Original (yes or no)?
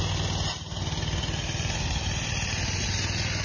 yes